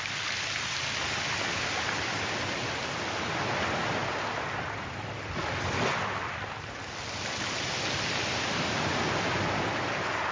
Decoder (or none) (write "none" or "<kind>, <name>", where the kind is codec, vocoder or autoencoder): none